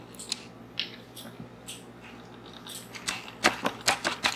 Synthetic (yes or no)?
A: no